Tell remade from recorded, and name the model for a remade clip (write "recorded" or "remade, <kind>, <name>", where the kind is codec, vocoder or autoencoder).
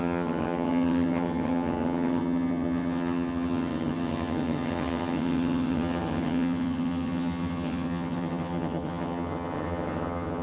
remade, vocoder, HiFi-GAN